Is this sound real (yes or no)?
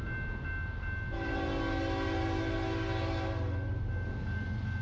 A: yes